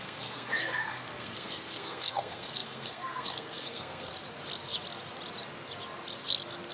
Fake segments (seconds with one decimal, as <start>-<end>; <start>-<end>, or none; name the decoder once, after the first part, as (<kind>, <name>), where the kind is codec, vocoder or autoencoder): 0.0-4.1 (codec, SNAC)